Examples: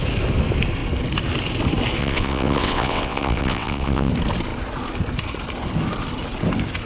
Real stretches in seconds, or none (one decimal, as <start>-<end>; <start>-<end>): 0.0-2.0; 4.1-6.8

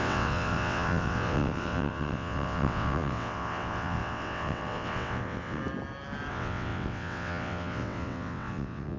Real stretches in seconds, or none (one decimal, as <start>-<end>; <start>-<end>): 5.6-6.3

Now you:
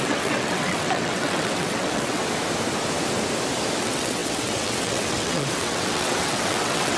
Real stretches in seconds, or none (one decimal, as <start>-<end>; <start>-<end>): 2.2-3.8

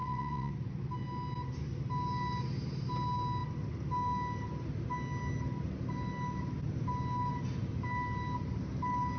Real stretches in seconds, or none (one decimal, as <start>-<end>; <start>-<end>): 0.5-9.2

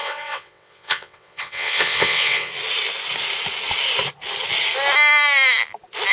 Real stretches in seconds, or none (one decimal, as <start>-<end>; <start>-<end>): 2.5-6.1

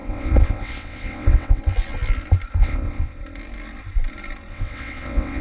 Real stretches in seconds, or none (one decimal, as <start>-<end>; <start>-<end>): 1.6-2.6; 3.2-4.5

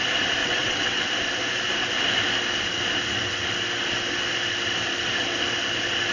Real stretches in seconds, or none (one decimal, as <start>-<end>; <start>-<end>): 0.0-0.4; 1.1-6.1